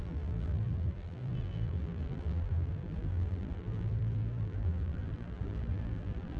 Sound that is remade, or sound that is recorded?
remade